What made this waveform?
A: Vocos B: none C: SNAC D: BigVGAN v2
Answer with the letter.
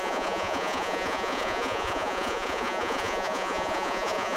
A